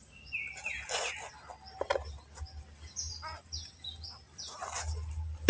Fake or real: real